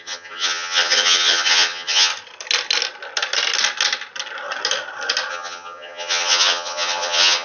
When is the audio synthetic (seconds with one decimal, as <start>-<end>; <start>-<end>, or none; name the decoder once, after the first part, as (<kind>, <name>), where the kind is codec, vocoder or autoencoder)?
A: 0.0-2.1 (vocoder, HiFi-GAN); 5.3-7.4